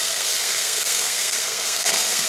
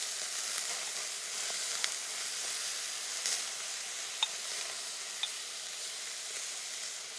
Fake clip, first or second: first